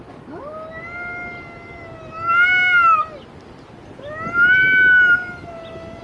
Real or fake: real